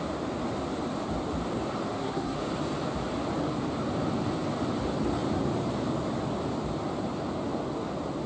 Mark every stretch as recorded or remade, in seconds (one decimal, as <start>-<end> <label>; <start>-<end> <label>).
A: 0.0-1.9 recorded; 1.9-2.4 remade; 2.4-8.3 recorded